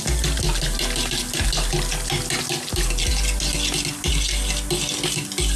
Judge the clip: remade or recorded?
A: recorded